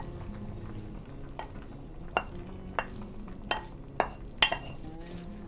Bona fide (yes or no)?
yes